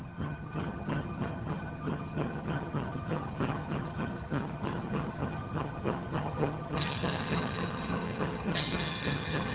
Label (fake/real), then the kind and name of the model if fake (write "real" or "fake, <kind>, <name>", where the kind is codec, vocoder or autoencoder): fake, vocoder, HiFi-GAN